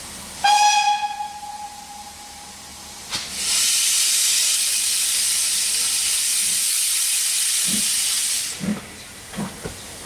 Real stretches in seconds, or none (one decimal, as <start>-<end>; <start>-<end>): 0.0-10.1